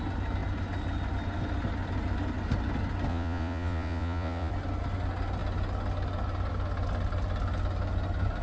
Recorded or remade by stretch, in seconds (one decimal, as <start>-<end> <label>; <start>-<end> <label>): 0.0-3.1 recorded; 3.1-4.5 remade; 4.5-8.4 recorded